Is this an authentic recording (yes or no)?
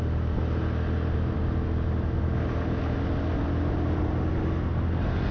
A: yes